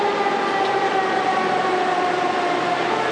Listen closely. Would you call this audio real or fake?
real